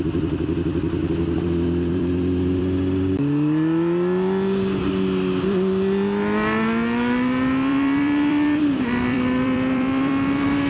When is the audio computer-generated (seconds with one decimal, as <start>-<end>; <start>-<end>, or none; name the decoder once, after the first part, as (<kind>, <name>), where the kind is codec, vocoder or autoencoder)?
1.0-2.6 (vocoder, BigVGAN v2); 7.7-10.7